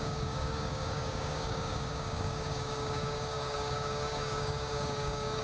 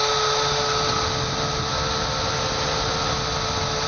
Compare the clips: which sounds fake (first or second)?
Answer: first